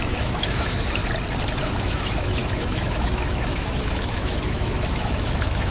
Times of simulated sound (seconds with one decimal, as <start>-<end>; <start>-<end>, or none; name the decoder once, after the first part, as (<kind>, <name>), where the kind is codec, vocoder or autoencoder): 0.0-1.0 (autoencoder, DAC-VAE); 1.6-5.7